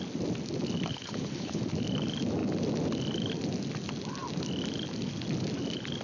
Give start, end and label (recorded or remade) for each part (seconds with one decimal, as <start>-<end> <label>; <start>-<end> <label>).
0.0-0.9 recorded; 0.9-1.6 remade; 1.6-6.0 recorded

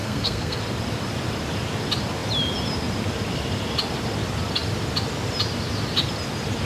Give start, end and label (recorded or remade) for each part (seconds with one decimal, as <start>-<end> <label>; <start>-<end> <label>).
0.0-0.6 remade; 0.6-6.7 recorded

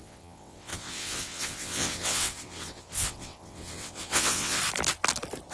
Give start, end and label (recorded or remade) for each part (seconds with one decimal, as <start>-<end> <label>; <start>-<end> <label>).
0.0-4.6 remade; 4.6-5.5 recorded